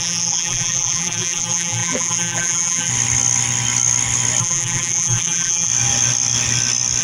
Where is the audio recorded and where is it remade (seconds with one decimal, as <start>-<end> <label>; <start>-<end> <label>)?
0.0-2.9 remade; 2.9-4.4 recorded; 4.4-5.7 remade; 5.7-7.0 recorded